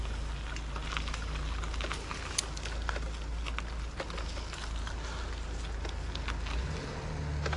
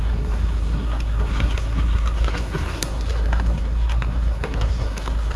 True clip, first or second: first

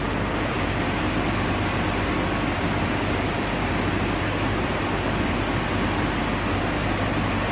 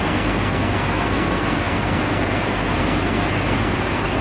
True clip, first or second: first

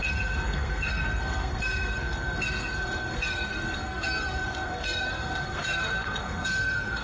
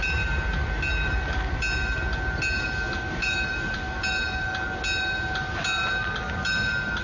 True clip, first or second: second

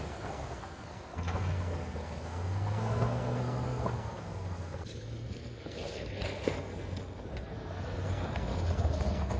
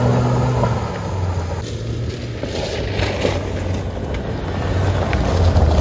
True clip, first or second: second